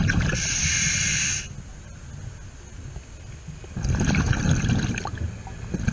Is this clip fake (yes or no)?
no